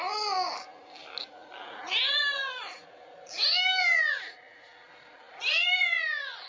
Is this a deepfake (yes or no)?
no